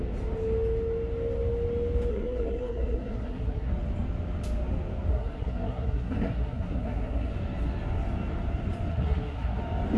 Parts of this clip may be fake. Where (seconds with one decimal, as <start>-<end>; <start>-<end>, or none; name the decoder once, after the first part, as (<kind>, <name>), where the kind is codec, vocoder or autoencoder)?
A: 2.1-3.7 (codec, SNAC); 5.1-7.3; 8.9-9.6